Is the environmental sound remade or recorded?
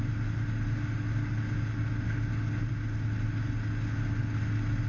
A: recorded